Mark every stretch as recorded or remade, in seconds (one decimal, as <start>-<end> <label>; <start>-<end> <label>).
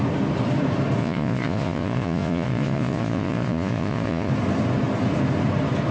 0.0-1.0 recorded; 1.0-4.3 remade; 4.3-5.9 recorded